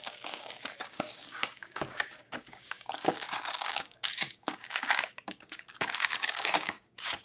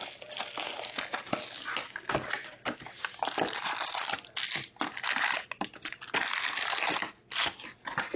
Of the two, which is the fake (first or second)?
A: first